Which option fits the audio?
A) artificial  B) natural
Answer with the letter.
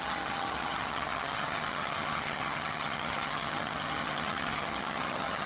A